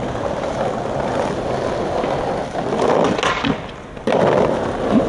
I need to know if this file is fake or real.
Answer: real